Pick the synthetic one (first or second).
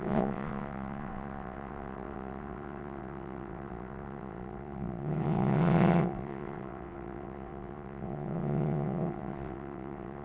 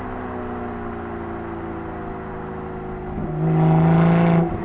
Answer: first